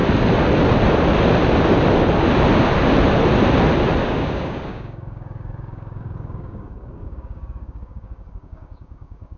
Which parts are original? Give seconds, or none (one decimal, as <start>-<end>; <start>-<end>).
0.0-4.0